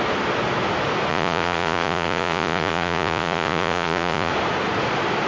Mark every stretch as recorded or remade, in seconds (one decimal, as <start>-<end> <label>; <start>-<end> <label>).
0.0-1.1 recorded; 1.1-4.3 remade; 4.3-5.3 recorded